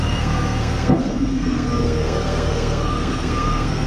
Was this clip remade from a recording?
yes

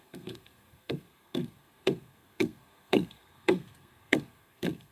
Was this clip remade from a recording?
yes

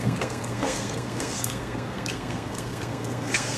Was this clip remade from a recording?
yes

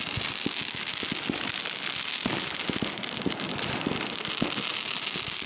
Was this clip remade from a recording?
no